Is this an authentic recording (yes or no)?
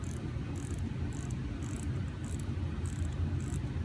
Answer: yes